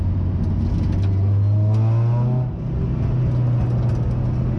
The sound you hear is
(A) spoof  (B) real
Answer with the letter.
B